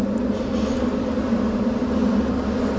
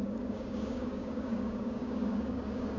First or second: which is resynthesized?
second